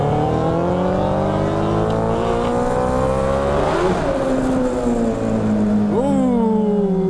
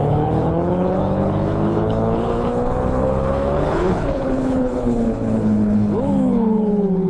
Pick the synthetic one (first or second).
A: second